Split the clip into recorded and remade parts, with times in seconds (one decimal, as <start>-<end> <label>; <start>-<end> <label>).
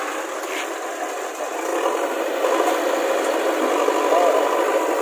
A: 0.0-5.0 recorded